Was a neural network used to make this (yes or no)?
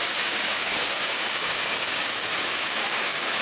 yes